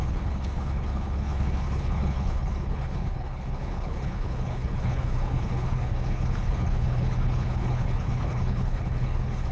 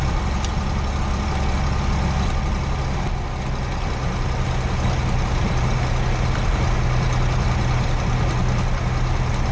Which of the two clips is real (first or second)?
second